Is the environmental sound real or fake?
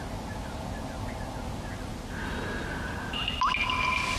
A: real